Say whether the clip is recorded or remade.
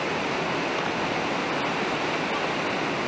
recorded